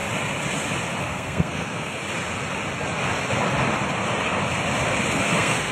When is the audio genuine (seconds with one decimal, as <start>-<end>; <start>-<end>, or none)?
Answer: 0.0-1.0; 2.0-5.1